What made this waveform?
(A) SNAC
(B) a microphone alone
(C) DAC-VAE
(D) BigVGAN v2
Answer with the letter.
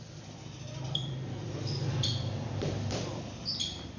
D